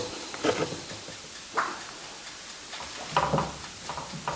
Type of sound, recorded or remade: recorded